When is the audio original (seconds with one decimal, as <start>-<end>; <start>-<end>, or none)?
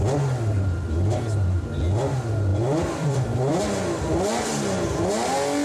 0.0-2.5; 3.6-5.6